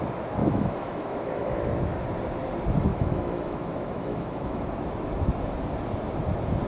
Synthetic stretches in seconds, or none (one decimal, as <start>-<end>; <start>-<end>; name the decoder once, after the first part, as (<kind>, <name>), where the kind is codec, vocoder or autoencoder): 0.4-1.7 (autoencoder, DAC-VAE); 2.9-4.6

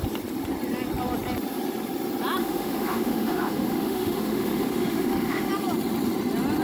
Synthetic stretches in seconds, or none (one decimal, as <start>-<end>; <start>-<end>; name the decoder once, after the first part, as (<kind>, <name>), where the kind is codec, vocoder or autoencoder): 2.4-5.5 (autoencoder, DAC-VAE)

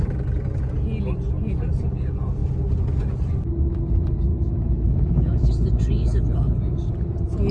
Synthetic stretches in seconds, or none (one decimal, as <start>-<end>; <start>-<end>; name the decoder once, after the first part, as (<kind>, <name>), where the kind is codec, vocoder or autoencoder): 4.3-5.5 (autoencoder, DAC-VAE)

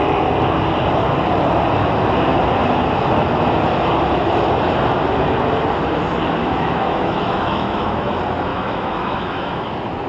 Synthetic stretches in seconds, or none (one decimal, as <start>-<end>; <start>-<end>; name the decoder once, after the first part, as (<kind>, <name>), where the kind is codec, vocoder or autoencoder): 6.4-8.1 (autoencoder, DAC-VAE); 8.5-9.7